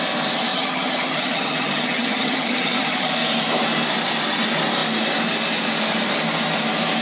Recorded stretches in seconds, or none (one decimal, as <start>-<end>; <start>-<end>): 0.0-0.5; 3.1-7.0